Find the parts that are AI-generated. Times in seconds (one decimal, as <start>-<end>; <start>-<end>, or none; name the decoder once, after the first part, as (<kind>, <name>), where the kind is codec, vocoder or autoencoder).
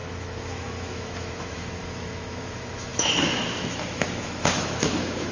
0.0-5.3 (autoencoder, DAC-VAE)